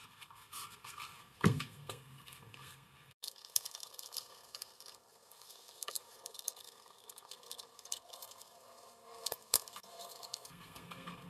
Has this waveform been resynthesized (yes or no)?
yes